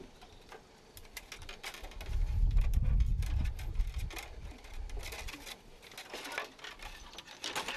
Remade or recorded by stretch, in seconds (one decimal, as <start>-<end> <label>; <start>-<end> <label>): 0.0-7.8 recorded